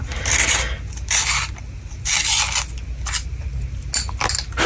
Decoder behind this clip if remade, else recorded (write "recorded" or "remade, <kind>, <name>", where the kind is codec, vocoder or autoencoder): recorded